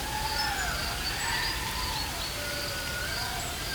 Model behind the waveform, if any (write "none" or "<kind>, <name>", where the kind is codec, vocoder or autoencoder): none